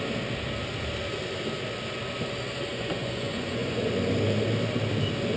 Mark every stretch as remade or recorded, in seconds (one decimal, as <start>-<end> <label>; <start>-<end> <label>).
0.0-2.7 recorded; 2.7-3.9 remade; 3.9-5.4 recorded